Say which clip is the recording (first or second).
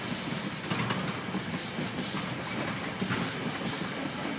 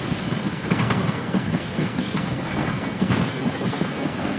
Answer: first